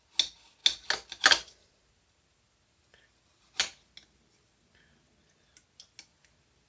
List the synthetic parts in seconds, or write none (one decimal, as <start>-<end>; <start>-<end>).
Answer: none